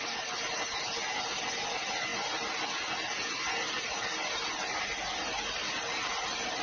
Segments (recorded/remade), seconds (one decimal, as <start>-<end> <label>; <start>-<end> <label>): 0.0-6.6 recorded